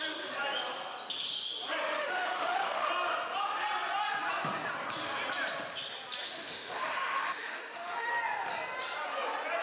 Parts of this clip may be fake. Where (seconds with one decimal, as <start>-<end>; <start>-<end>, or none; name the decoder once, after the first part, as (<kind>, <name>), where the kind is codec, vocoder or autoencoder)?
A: 2.0-2.9 (autoencoder, DAC-VAE); 6.2-8.1